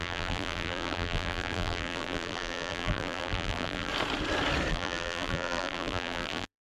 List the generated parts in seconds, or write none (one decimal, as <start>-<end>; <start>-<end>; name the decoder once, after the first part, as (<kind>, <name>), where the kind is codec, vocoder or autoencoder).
0.0-3.9 (vocoder, BigVGAN v2); 4.7-6.6

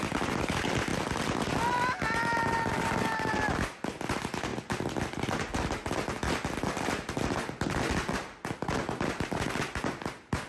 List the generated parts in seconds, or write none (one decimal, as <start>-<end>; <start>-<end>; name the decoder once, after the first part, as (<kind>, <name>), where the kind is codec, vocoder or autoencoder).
none

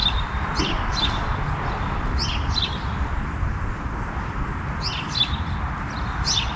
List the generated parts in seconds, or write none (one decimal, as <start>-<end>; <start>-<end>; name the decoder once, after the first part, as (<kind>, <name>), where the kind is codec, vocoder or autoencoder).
none

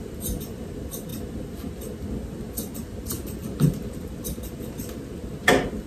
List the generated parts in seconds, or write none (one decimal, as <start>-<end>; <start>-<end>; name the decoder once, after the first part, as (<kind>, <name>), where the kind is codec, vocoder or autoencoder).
none

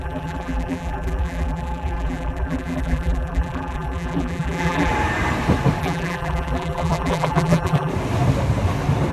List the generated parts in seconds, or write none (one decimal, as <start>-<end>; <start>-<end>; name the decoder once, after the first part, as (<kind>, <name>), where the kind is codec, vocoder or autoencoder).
0.0-4.9 (vocoder, BigVGAN v2); 5.8-7.9